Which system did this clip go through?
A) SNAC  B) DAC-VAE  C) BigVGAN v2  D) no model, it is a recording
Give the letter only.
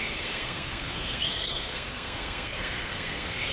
A